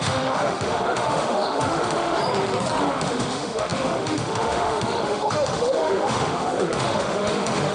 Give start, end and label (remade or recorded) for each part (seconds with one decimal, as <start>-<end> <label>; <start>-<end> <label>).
0.0-2.2 remade; 2.2-2.8 recorded; 2.8-7.7 remade